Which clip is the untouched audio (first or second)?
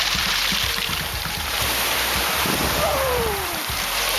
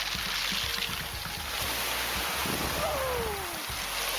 second